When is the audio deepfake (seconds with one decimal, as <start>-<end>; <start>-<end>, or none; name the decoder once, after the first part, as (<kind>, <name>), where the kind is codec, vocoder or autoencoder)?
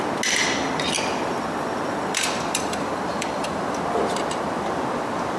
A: 0.4-3.6 (vocoder, BigVGAN v2)